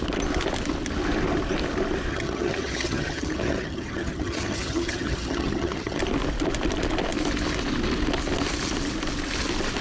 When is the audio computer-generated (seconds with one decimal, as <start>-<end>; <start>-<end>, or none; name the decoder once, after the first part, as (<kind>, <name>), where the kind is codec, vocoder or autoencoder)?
2.1-6.0 (vocoder, HiFi-GAN)